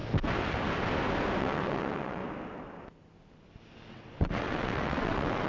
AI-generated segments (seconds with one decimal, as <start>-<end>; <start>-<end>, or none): 1.4-2.2; 3.9-5.5